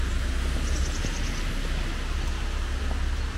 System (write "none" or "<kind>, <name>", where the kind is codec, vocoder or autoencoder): none